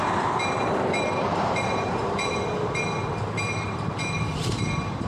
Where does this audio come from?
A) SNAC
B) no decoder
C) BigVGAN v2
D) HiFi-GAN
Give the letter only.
C